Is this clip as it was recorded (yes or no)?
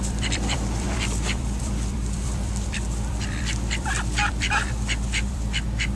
no